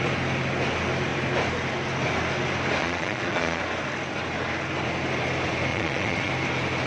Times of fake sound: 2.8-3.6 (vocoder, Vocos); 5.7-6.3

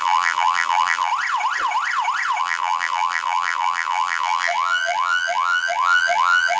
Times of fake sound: 0.0-1.1 (vocoder, BigVGAN v2); 2.4-6.6

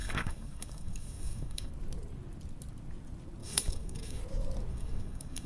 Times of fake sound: 0.0-1.7 (codec, DAC); 3.4-4.2; 4.7-5.5

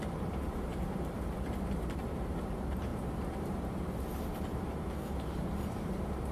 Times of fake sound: 0.0-6.3 (vocoder, BigVGAN v2)

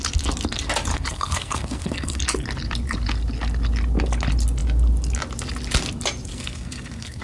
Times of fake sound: 0.9-2.2 (codec, SNAC); 6.3-7.2